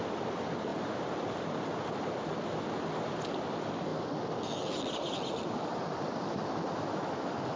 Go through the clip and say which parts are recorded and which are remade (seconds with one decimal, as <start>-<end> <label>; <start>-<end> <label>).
0.0-0.7 recorded; 0.7-3.2 remade; 3.2-3.9 recorded; 3.9-7.1 remade; 7.1-7.6 recorded